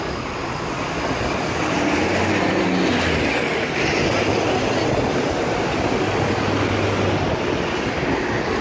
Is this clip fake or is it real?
real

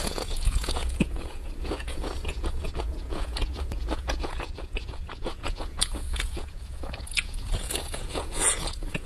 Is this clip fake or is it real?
fake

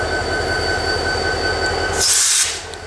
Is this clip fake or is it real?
real